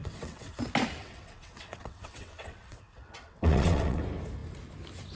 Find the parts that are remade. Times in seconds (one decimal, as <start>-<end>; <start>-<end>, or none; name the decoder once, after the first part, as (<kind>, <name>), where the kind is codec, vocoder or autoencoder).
0.0-0.6 (vocoder, WaveNeXt); 1.0-4.0